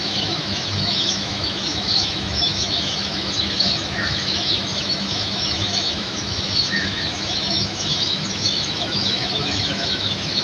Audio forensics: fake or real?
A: fake